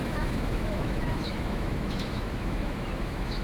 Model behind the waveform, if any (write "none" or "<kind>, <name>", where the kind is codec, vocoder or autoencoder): autoencoder, DAC-VAE